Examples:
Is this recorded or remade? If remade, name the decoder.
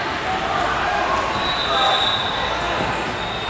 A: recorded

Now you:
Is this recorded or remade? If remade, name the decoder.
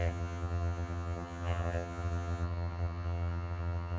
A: remade, vocoder, HiFi-GAN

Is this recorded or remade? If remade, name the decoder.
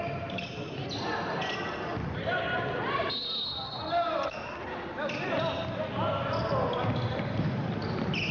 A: recorded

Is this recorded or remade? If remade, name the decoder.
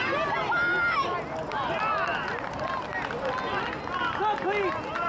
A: recorded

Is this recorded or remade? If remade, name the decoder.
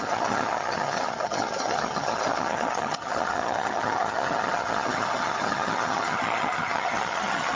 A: remade, vocoder, HiFi-GAN